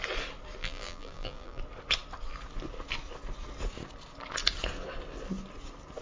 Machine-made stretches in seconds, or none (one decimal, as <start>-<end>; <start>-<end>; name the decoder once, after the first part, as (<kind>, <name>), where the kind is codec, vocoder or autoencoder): 0.6-1.6 (vocoder, BigVGAN v2)